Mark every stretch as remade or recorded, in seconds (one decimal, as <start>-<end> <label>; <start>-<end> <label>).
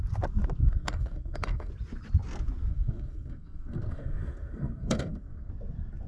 0.0-0.6 recorded; 0.6-1.7 remade; 1.7-2.7 recorded; 2.7-5.5 remade; 5.5-6.1 recorded